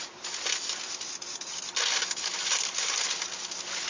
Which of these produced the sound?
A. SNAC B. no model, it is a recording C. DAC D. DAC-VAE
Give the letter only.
B